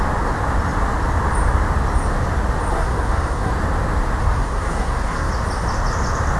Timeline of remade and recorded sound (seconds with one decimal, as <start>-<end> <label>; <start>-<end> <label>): 0.0-2.7 recorded; 2.7-3.5 remade; 3.5-4.2 recorded; 4.2-5.3 remade; 5.3-6.4 recorded